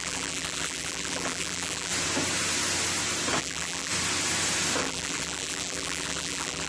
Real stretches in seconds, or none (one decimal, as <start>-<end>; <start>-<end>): 1.9-3.4; 3.9-4.8